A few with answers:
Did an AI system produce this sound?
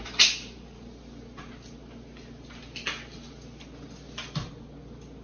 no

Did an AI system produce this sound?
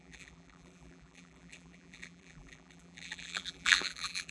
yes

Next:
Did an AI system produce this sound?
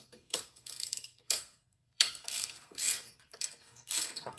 yes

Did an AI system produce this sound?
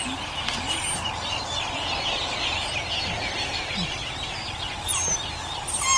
no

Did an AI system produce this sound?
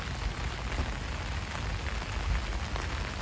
no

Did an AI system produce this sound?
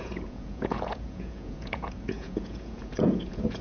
yes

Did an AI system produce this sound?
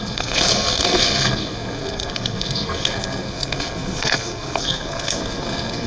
yes